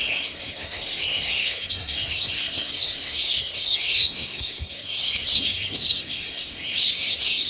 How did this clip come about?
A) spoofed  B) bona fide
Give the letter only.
A